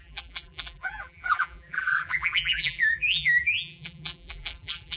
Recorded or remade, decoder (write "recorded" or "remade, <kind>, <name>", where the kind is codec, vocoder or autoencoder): remade, vocoder, BigVGAN v2